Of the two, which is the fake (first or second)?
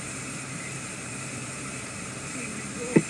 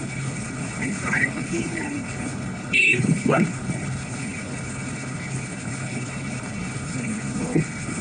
second